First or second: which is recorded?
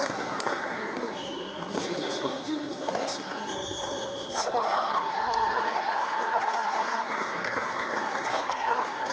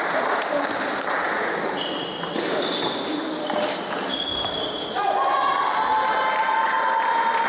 second